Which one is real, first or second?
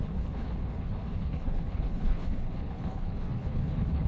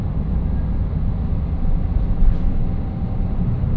second